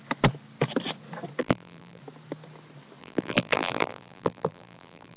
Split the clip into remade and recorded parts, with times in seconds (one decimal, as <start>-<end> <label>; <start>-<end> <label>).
0.0-1.4 recorded; 1.4-2.0 remade; 2.0-3.0 recorded; 3.0-5.2 remade